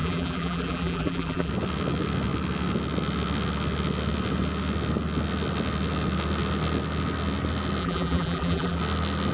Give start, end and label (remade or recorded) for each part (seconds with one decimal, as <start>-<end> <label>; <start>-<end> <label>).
0.0-1.5 remade; 1.5-7.8 recorded; 7.8-8.8 remade; 8.8-9.3 recorded